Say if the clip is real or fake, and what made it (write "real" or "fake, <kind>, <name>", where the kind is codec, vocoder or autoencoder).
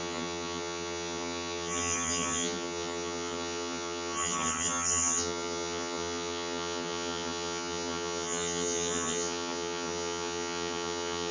fake, vocoder, HiFi-GAN